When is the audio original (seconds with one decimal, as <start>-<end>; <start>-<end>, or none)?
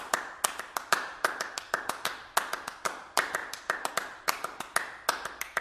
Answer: 0.0-5.6